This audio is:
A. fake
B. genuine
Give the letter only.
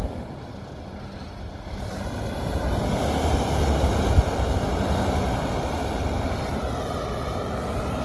B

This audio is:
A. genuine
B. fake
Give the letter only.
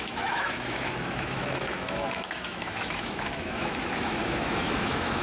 B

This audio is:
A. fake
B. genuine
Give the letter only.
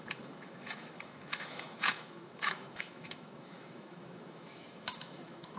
A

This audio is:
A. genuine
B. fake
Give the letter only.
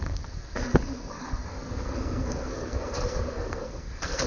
B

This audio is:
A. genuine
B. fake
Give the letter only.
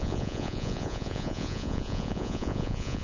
B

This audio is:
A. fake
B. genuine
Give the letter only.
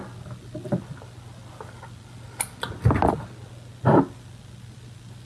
B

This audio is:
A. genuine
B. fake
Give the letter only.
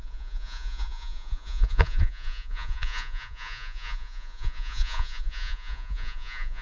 B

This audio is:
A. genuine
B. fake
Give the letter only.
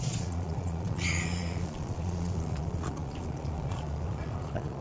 B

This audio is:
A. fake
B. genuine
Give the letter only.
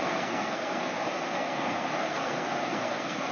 A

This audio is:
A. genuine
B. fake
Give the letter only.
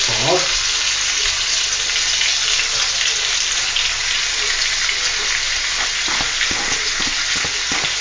A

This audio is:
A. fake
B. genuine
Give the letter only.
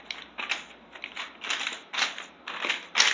B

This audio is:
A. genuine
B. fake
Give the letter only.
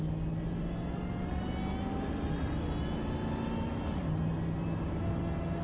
A